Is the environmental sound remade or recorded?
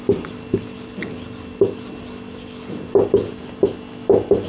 recorded